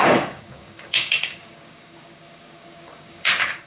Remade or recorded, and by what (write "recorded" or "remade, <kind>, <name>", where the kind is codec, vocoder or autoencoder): remade, codec, DAC